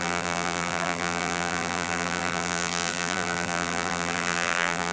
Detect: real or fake fake